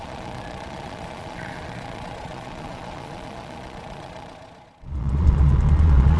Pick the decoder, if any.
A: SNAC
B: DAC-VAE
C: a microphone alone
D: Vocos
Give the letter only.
D